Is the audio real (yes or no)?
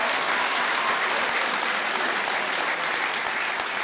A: yes